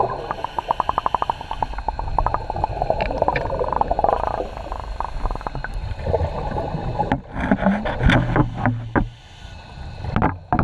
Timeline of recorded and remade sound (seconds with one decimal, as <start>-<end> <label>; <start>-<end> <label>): 0.0-10.6 recorded